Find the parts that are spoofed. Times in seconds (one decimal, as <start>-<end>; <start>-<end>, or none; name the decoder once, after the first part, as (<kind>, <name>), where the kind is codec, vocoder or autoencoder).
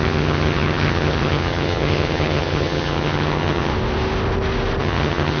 0.0-3.7 (vocoder, HiFi-GAN); 4.8-5.4